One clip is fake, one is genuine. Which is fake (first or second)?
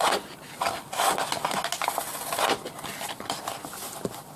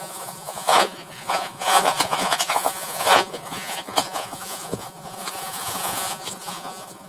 second